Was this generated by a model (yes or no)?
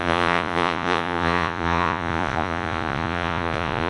yes